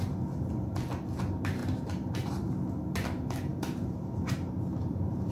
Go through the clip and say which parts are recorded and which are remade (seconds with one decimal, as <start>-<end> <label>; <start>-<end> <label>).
0.0-1.6 recorded; 1.6-2.5 remade; 2.5-3.5 recorded; 3.5-5.3 remade